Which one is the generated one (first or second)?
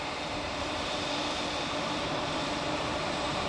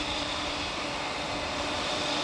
first